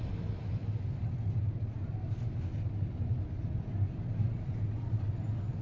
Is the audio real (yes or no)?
yes